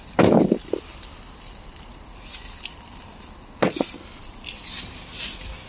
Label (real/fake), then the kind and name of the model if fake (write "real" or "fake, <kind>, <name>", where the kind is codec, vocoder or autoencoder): real